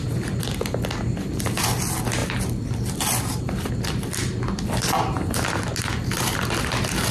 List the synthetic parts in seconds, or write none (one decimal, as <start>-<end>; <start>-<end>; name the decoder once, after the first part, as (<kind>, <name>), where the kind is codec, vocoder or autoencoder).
none